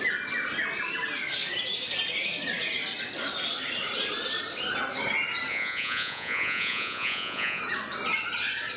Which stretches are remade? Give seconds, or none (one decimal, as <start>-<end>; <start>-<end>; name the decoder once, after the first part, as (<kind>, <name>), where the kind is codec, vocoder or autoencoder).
5.5-7.6 (vocoder, Vocos)